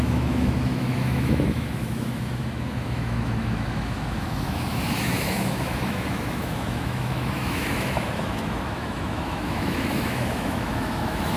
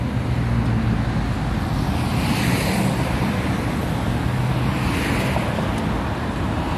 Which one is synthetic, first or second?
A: first